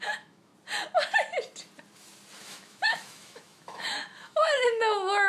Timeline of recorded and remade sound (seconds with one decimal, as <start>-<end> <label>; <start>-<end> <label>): 0.0-0.5 remade; 0.5-2.4 recorded; 2.4-5.3 remade